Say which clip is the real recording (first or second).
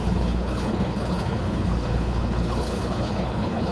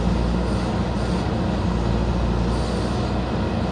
second